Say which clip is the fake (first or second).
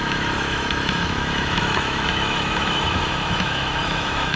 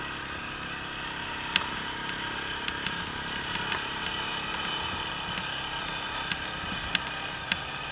first